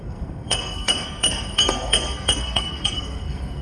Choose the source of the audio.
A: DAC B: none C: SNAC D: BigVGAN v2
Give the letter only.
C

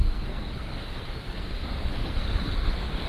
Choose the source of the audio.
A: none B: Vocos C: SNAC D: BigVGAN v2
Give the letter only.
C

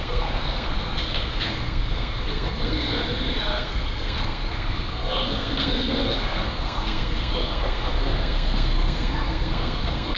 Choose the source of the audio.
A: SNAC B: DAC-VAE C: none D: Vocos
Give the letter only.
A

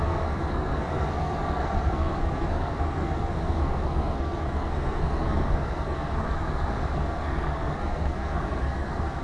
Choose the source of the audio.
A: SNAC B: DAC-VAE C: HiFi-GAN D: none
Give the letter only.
A